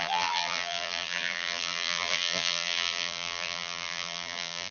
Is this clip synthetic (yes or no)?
yes